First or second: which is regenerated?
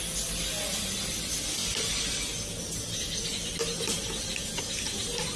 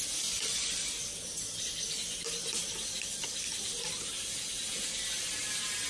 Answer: second